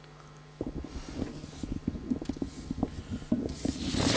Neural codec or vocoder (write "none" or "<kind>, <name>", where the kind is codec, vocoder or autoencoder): none